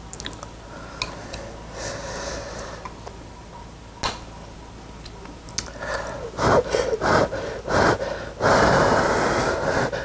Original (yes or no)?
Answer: yes